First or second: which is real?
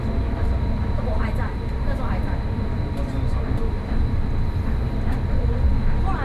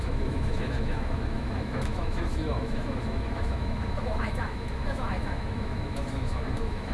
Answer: first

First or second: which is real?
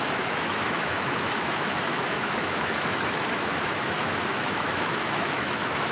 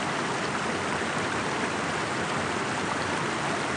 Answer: second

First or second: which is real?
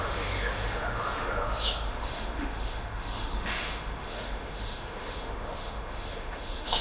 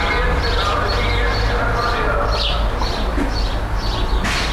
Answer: second